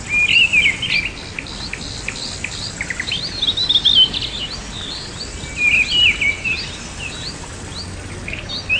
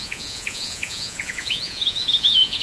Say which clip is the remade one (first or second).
second